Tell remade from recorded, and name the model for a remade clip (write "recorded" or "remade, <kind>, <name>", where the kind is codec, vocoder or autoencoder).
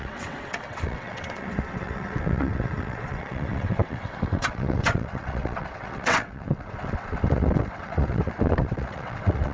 remade, vocoder, WaveNeXt